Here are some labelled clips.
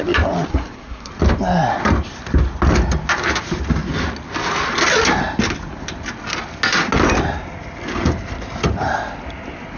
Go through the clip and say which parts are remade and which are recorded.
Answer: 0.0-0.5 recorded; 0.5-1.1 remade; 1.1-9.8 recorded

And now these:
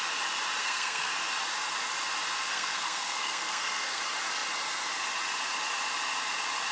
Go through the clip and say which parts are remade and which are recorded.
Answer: 0.0-0.6 recorded; 0.6-1.1 remade; 1.1-2.5 recorded; 2.5-4.0 remade; 4.0-6.7 recorded

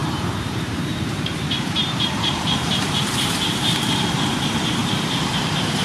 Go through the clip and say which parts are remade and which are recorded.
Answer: 0.0-3.5 remade; 3.5-4.8 recorded; 4.8-5.8 remade

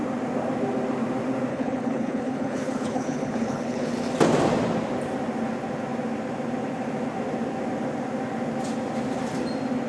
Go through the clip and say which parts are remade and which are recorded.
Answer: 0.0-1.5 recorded; 1.5-3.9 remade; 3.9-9.9 recorded

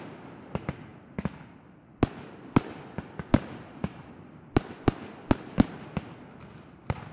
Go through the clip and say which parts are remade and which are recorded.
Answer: 0.0-7.1 recorded

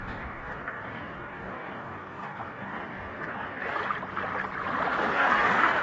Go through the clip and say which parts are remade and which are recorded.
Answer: 0.0-3.8 remade; 3.8-5.0 recorded; 5.0-5.8 remade

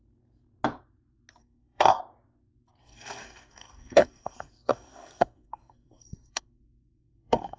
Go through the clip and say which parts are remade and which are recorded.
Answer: 0.0-1.4 recorded; 1.4-2.0 remade; 2.0-2.8 recorded; 2.8-7.6 remade